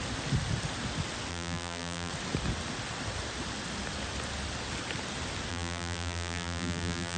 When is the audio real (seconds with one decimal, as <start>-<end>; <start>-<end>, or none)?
0.0-1.3; 2.1-5.5

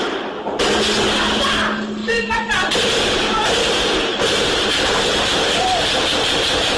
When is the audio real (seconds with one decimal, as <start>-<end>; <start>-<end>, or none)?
0.0-2.0; 2.7-4.1